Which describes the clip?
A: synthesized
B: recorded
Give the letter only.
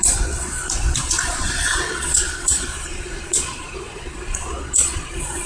A